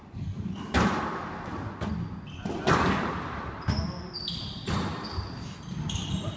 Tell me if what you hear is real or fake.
real